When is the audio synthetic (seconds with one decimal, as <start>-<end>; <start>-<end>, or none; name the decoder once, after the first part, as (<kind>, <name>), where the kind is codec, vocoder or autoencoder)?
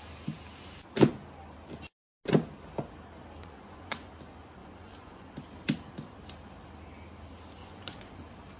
3.4-4.1 (vocoder, Vocos); 4.6-5.3; 7.6-8.2